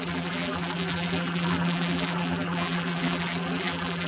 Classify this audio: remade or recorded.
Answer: remade